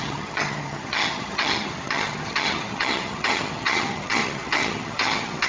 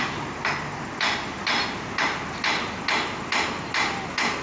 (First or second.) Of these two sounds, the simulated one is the first